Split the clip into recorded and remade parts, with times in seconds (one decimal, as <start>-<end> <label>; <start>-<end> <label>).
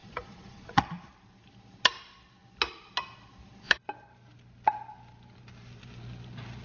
0.0-1.1 remade; 1.1-6.6 recorded